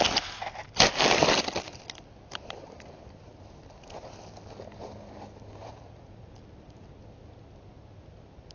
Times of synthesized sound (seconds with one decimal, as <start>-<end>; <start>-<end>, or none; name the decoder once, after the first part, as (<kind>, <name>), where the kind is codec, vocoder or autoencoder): 5.6-6.3 (vocoder, Vocos)